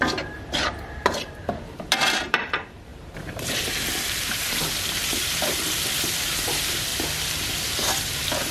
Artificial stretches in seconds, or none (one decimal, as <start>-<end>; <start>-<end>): 0.0-6.9; 8.1-8.5

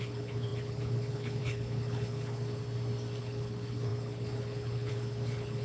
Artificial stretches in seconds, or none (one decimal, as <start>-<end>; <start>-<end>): 0.0-2.6; 3.2-5.6

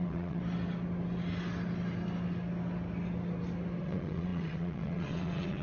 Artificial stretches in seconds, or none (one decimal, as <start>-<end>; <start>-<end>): 0.0-0.4; 3.8-5.6

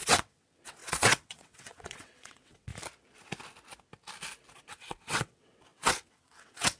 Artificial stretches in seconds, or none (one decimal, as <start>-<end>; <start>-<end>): 0.0-2.7; 4.7-6.8